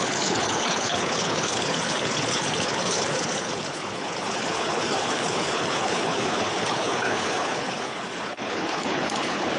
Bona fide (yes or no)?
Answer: no